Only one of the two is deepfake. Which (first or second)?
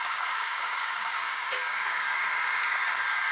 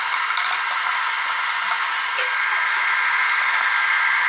first